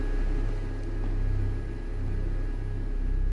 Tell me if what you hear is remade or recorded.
recorded